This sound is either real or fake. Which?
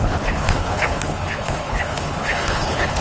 fake